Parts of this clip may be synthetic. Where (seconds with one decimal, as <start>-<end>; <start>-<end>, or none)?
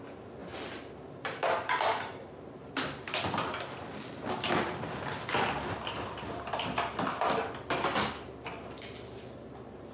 none